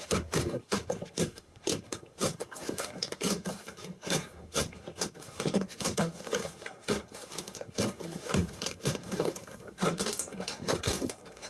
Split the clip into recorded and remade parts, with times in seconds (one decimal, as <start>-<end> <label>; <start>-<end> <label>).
0.0-11.5 remade